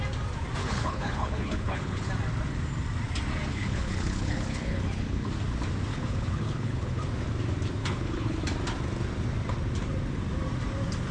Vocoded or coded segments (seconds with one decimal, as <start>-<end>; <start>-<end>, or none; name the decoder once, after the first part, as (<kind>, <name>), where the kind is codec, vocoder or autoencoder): 0.6-2.1 (codec, HILCodec); 3.5-5.3; 5.9-7.0; 7.8-8.4